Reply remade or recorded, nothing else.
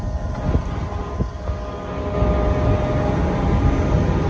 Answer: recorded